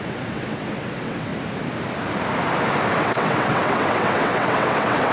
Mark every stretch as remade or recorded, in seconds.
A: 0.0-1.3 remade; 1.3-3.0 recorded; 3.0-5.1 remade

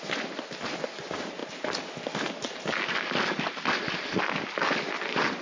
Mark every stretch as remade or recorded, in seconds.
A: 0.0-5.4 recorded

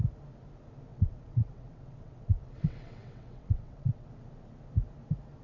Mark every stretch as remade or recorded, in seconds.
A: 0.0-0.9 recorded; 0.9-4.1 remade; 4.1-5.4 recorded